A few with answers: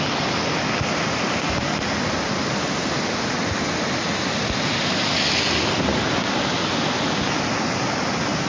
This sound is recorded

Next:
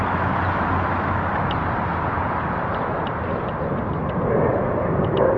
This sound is recorded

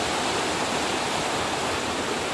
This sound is recorded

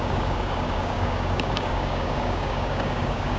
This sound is remade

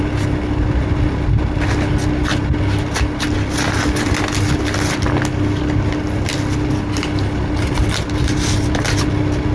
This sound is recorded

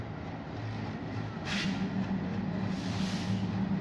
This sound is recorded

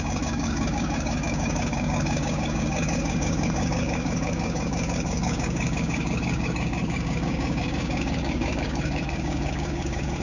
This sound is remade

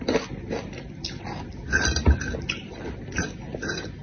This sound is recorded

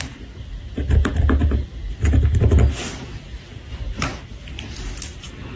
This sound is recorded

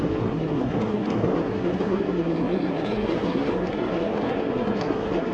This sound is remade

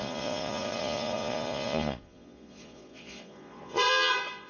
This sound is remade